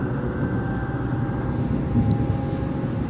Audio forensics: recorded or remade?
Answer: recorded